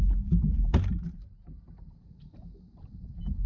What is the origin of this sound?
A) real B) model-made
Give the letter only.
B